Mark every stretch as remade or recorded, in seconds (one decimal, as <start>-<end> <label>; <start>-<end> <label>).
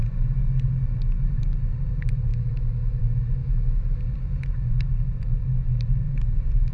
0.0-2.3 recorded; 2.3-3.0 remade; 3.0-3.4 recorded; 3.4-4.0 remade; 4.0-6.7 recorded